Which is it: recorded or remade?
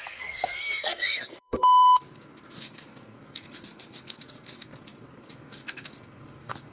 remade